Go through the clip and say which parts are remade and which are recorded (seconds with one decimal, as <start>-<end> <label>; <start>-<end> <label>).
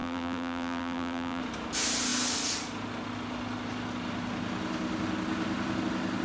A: 0.0-1.4 remade; 1.4-6.2 recorded